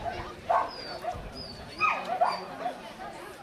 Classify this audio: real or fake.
fake